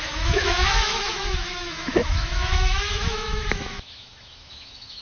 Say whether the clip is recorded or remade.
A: remade